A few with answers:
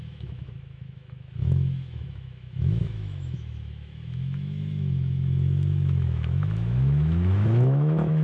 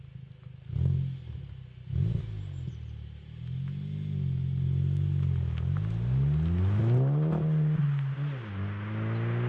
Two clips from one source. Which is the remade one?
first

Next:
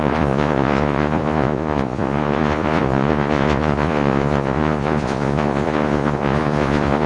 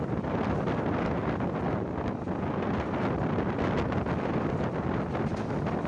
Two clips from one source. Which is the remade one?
first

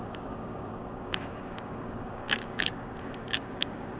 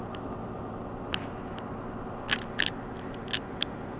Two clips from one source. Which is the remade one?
first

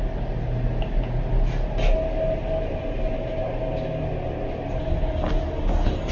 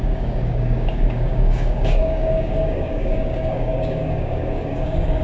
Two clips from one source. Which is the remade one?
second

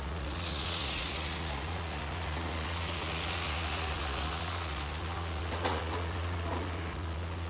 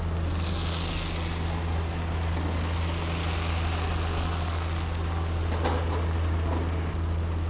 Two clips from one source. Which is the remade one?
first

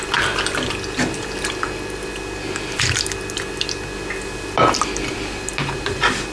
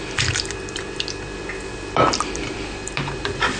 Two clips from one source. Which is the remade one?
second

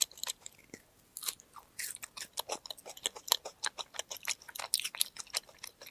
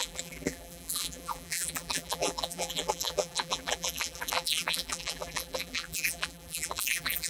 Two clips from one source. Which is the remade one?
second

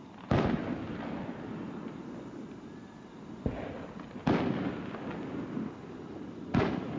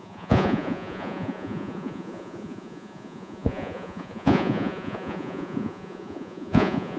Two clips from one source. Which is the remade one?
second